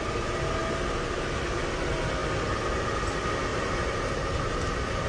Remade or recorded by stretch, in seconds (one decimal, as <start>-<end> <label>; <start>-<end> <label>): 0.0-3.5 recorded; 3.5-4.1 remade; 4.1-5.1 recorded